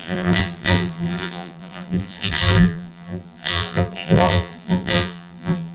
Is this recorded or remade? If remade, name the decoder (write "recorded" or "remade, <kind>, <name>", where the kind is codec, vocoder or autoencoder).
remade, vocoder, BigVGAN v2